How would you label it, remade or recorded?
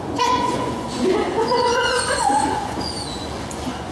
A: remade